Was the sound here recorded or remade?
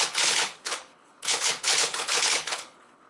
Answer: remade